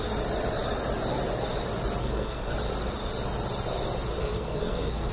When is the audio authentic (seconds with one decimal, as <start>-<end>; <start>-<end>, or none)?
0.0-2.0; 2.5-4.2